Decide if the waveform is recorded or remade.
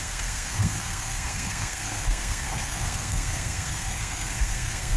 remade